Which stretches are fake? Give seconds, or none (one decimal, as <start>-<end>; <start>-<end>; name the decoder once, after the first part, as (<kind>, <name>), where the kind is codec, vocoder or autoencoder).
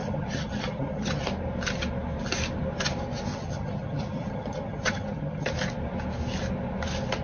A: 0.0-1.2 (vocoder, HiFi-GAN); 3.3-5.5